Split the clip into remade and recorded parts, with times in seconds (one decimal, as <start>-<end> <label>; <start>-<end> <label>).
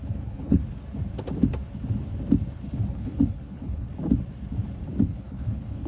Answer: 0.0-0.6 remade; 0.6-2.9 recorded; 2.9-3.9 remade; 3.9-5.0 recorded; 5.0-5.9 remade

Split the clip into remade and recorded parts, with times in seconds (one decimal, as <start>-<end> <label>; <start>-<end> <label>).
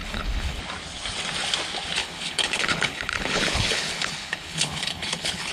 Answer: 0.0-0.6 remade; 0.6-2.0 recorded; 2.0-5.5 remade